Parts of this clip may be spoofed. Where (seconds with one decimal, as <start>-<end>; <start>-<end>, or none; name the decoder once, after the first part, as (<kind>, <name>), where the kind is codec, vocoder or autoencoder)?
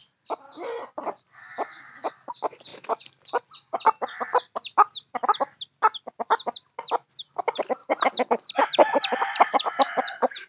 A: 0.0-2.7 (vocoder, BigVGAN v2); 6.8-10.5